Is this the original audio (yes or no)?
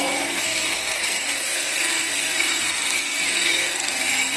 no